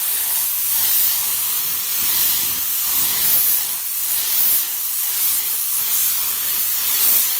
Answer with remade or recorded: recorded